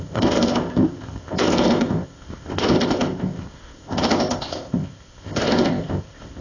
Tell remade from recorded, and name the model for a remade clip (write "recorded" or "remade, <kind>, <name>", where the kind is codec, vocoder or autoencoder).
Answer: remade, codec, ZipCodec